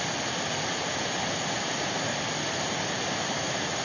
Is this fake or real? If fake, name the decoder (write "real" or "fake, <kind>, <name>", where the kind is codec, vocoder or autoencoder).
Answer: real